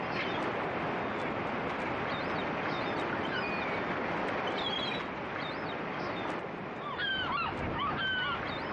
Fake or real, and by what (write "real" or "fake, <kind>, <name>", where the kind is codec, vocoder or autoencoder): real